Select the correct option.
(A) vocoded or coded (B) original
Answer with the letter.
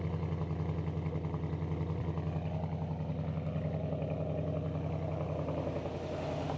B